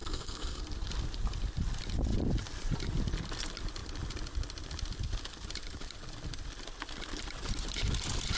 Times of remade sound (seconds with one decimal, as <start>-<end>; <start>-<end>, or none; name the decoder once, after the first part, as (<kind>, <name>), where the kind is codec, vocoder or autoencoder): 0.0-0.6 (codec, SNAC)